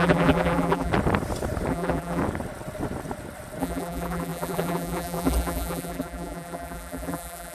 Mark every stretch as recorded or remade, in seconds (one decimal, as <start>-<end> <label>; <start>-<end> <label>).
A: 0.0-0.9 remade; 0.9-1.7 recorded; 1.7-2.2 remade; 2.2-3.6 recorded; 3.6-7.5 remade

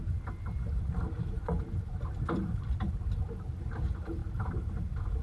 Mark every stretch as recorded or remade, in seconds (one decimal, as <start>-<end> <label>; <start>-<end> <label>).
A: 0.0-5.2 recorded

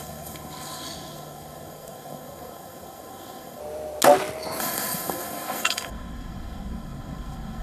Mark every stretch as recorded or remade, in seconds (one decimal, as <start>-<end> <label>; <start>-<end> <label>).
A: 0.0-3.6 remade; 3.6-4.6 recorded; 4.6-7.6 remade